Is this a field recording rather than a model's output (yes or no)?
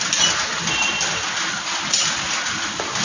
yes